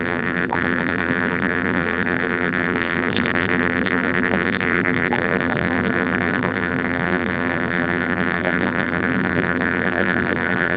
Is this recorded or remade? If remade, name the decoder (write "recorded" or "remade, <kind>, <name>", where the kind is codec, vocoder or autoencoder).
remade, vocoder, BigVGAN v2